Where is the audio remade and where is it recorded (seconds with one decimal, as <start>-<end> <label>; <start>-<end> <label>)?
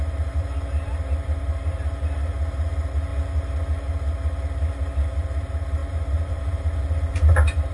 0.0-3.1 remade; 3.1-3.7 recorded; 3.7-7.7 remade